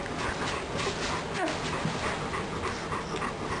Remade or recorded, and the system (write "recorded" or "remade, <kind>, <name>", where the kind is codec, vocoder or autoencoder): recorded